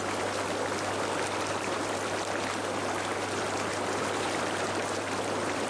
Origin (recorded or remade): recorded